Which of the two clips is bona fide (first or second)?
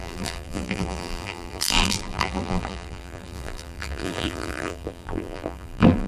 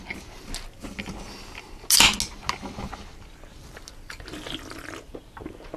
second